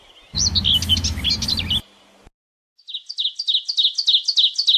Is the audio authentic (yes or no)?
yes